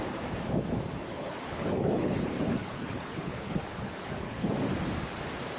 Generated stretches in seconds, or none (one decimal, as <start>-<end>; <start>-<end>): 1.1-4.5